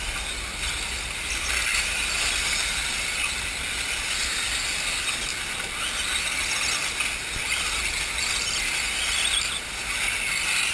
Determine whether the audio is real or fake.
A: real